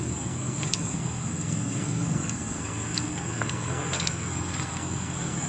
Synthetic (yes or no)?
yes